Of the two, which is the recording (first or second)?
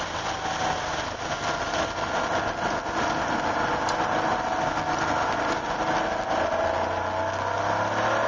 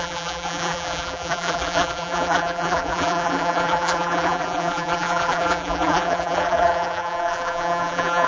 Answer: first